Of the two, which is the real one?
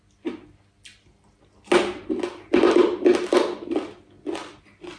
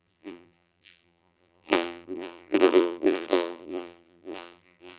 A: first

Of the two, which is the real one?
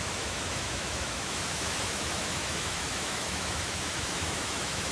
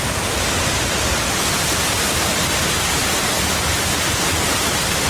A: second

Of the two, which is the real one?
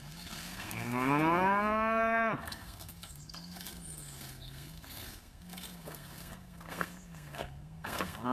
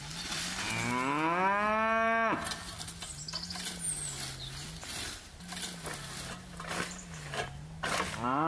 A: second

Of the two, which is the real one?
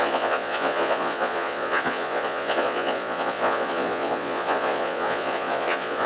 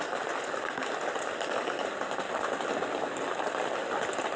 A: second